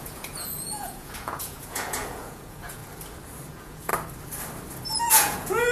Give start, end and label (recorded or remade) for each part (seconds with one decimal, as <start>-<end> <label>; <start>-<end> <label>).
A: 0.0-2.8 remade; 2.8-3.5 recorded; 3.5-3.9 remade; 3.9-5.0 recorded; 5.0-5.7 remade